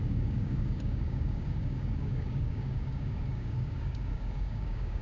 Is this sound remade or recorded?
remade